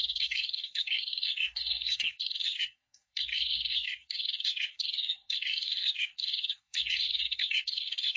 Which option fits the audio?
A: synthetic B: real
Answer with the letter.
A